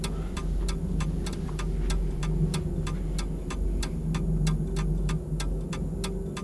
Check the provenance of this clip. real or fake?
real